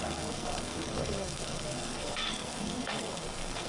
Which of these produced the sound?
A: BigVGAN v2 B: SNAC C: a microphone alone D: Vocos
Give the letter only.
B